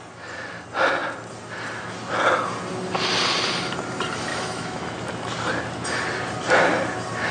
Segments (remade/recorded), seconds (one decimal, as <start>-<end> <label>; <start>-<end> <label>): 0.0-4.3 recorded; 4.3-4.8 remade; 4.8-7.3 recorded